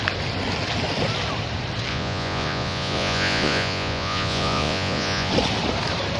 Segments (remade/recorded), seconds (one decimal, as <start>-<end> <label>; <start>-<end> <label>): 0.0-1.9 recorded; 1.9-5.3 remade; 5.3-6.2 recorded